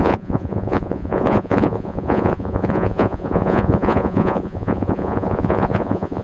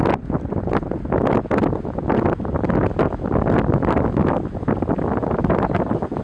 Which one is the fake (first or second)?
first